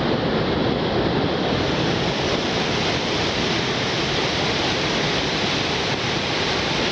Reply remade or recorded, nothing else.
recorded